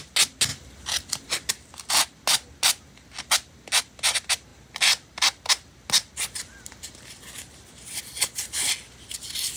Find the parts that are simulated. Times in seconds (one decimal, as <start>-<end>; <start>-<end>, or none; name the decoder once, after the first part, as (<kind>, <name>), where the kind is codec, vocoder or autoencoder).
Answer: none